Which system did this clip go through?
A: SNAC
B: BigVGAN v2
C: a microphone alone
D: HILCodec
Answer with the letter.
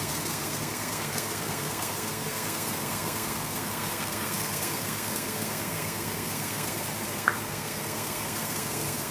A